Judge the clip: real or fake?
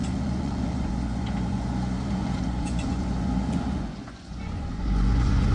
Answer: fake